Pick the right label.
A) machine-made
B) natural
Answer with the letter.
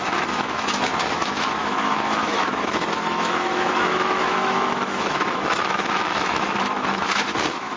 A